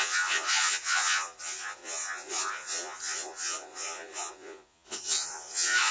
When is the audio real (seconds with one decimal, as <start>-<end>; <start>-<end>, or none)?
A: none